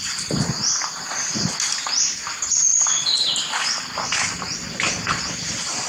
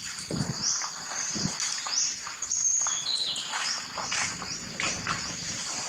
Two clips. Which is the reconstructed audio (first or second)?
second